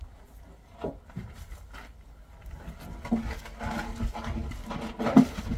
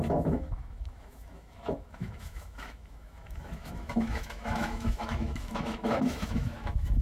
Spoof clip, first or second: second